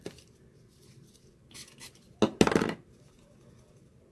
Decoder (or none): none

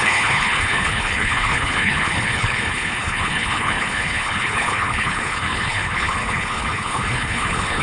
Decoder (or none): codec, HILCodec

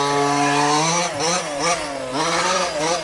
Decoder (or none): none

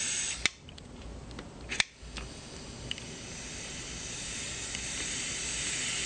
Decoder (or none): none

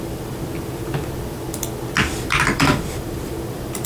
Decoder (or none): vocoder, BigVGAN v2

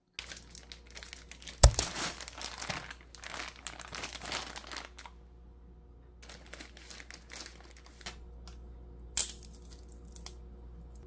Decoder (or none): none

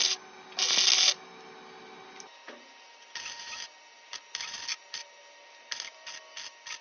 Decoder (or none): none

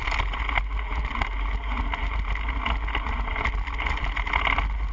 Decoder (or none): none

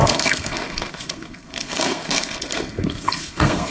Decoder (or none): codec, SNAC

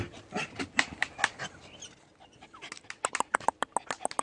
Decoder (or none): none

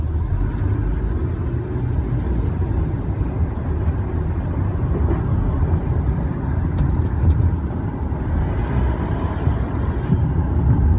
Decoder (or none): none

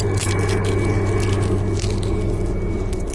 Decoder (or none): none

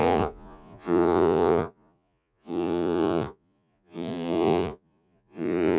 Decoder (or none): vocoder, Vocos